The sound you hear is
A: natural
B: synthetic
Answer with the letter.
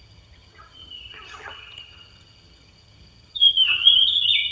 B